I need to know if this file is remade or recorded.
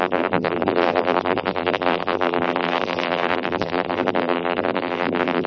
remade